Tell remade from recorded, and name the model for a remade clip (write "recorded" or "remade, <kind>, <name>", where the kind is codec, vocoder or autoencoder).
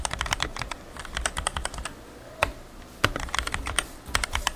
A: remade, vocoder, BigVGAN v2